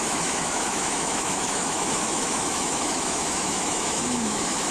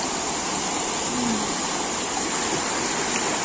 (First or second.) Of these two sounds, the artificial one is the first